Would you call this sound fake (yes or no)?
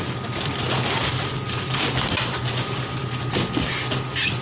no